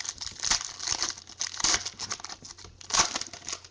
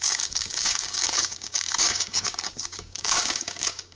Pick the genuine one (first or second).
first